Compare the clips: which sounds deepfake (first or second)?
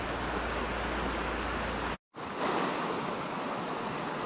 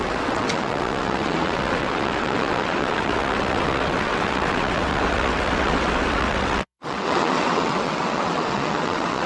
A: second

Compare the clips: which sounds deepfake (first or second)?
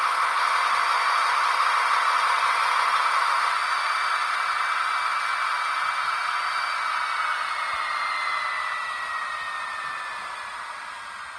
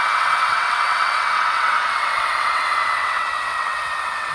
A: second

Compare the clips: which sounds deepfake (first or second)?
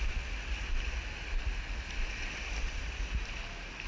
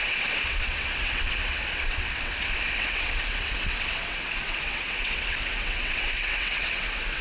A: second